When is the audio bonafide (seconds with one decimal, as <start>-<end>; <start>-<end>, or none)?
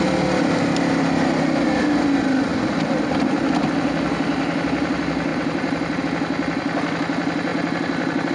0.0-5.3; 6.0-7.5